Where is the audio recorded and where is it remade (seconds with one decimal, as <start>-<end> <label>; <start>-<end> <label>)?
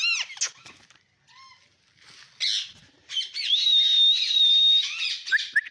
0.0-5.7 recorded